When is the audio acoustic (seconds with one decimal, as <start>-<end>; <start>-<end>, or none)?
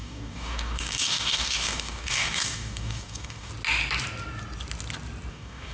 3.5-5.3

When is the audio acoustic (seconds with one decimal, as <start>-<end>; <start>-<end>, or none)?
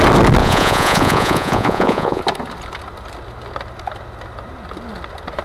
0.0-0.4; 2.2-5.4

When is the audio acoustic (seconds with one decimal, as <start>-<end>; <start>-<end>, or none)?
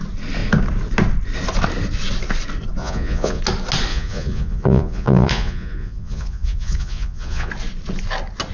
0.0-2.8; 3.4-3.9; 7.5-8.5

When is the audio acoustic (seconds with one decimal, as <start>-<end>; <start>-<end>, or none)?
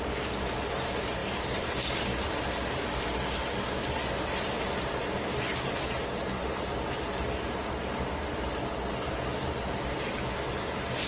0.0-11.1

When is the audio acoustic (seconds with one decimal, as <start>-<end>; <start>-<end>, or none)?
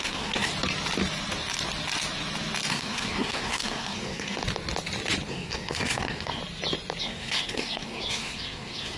0.5-2.7; 4.4-5.3; 6.4-7.0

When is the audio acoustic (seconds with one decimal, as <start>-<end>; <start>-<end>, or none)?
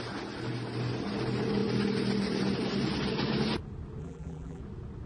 0.0-4.0; 4.6-5.1